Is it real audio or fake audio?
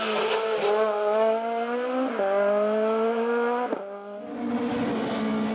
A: real